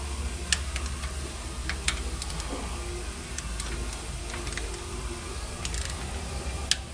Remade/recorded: recorded